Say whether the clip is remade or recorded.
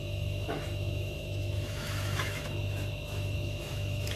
remade